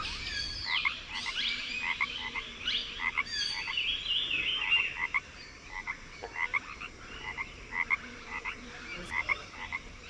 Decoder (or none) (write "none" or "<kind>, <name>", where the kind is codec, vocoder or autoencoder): vocoder, BigVGAN v2